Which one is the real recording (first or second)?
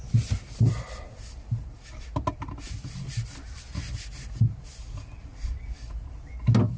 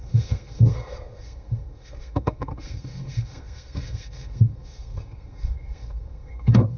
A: first